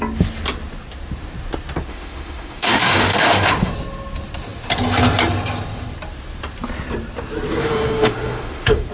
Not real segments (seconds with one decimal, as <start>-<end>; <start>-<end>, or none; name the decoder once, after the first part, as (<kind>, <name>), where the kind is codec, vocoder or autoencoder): 1.9-3.7 (autoencoder, DAC-VAE); 7.6-8.9